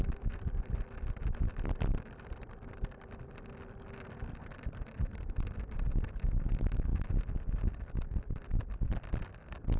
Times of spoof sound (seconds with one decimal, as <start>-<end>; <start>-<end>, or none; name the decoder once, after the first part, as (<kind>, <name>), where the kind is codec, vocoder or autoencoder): 0.0-6.9 (vocoder, BigVGAN v2); 7.6-9.8